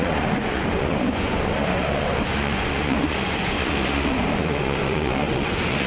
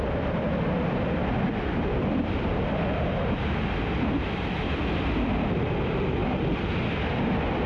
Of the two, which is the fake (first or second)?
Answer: first